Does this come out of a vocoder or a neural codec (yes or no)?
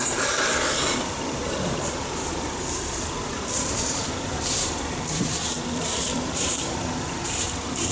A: yes